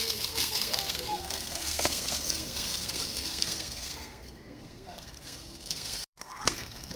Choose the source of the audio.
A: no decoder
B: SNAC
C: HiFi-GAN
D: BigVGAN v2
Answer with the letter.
B